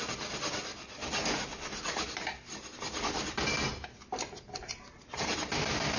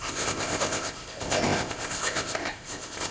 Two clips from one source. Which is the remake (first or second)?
second